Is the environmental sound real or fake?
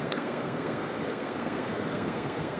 fake